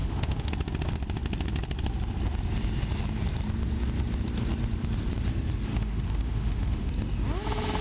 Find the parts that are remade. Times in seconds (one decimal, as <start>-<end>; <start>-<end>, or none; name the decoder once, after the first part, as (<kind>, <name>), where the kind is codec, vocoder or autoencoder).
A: 0.0-0.5 (autoencoder, DAC-VAE); 5.7-6.9

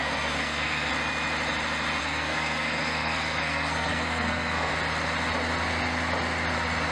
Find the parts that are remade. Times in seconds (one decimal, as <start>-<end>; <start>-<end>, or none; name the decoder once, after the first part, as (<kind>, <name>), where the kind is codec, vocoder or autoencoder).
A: 0.0-0.9 (codec, SNAC); 2.0-4.7